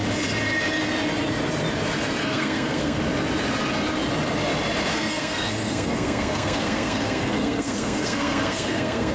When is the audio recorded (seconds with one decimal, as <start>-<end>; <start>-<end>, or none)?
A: 0.0-2.2; 3.0-4.9